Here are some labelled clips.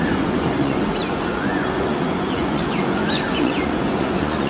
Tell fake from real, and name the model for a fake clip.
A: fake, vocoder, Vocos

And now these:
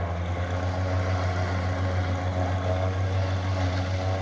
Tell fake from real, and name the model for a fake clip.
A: real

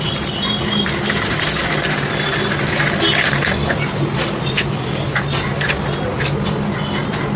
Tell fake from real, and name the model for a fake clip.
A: real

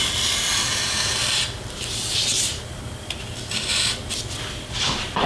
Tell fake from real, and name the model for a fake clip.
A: fake, vocoder, BigVGAN v2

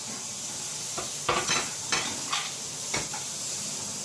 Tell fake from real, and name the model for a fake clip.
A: real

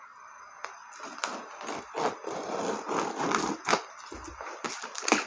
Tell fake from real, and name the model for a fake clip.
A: real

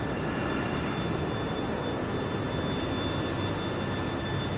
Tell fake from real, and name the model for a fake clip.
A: real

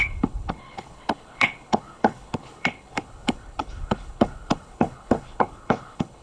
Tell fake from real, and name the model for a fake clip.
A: fake, codec, HILCodec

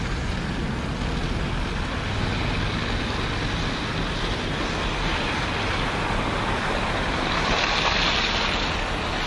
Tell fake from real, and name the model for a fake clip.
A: real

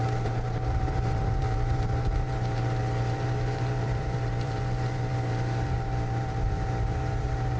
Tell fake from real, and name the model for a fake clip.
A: fake, vocoder, BigVGAN v2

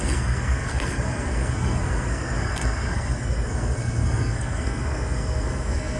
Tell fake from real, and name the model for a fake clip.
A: fake, codec, SNAC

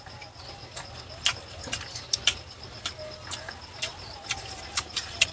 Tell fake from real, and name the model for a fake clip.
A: real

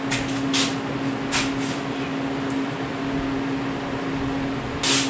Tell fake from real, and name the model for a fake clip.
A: real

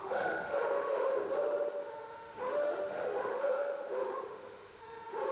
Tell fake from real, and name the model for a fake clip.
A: fake, autoencoder, DAC-VAE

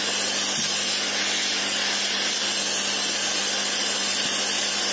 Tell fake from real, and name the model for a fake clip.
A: real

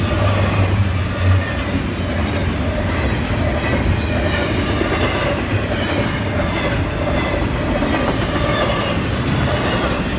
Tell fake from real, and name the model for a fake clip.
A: real